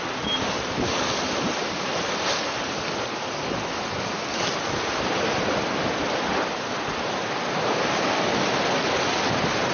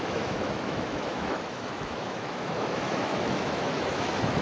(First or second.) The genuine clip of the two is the first